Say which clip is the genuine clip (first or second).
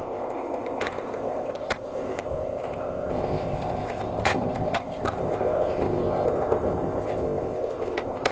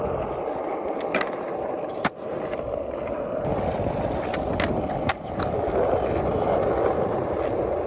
second